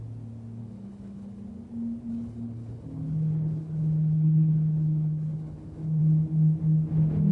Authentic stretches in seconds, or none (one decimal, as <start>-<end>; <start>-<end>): 0.0-0.6; 1.4-2.1; 6.0-7.3

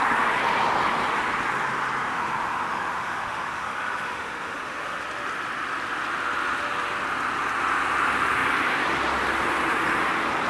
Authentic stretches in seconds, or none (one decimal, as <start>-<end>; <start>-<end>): 0.0-2.0; 5.0-10.5

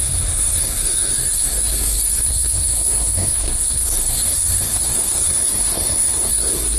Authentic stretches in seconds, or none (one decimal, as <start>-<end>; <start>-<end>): none